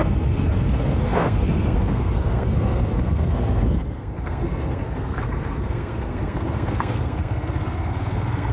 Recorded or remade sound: remade